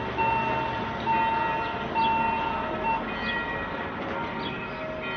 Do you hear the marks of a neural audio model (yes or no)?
no